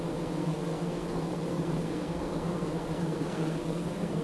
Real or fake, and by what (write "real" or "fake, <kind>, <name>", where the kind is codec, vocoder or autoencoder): fake, codec, SNAC